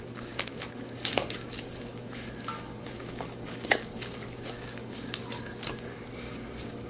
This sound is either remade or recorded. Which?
remade